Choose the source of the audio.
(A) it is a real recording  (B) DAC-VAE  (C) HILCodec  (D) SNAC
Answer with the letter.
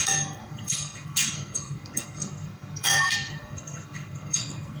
D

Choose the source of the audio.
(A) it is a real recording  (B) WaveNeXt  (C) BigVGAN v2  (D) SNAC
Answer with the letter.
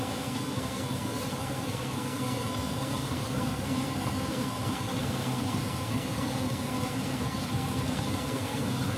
D